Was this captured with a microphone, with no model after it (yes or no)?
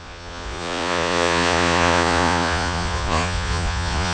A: no